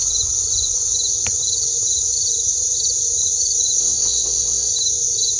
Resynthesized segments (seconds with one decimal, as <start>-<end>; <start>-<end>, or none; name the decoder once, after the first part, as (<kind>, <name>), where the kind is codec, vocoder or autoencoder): 3.8-4.7 (vocoder, WaveNeXt)